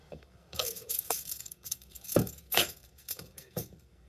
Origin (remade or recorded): remade